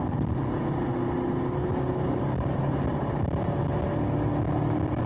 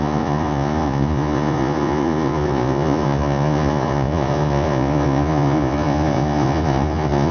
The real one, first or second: first